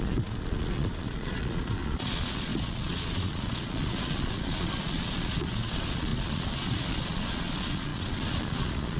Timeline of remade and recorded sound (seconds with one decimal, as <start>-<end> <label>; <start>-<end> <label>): 0.0-9.0 remade